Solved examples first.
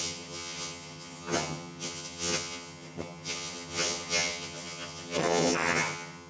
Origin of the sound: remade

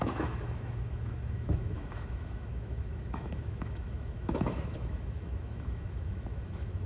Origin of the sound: remade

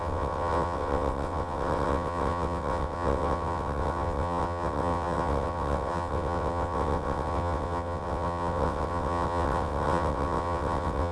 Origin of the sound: remade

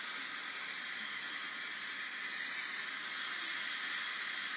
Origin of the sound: remade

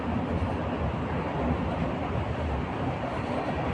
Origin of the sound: recorded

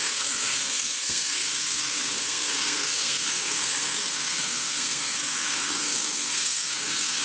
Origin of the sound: remade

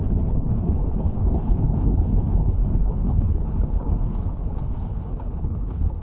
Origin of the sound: remade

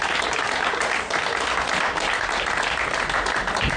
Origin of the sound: recorded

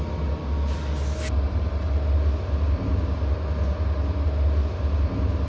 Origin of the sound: recorded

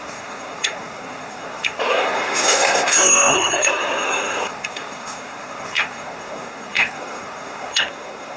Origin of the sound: remade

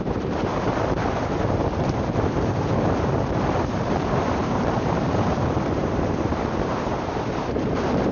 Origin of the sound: remade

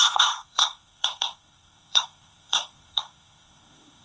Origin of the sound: remade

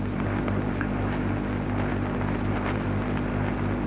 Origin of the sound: recorded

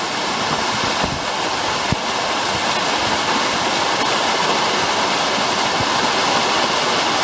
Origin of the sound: recorded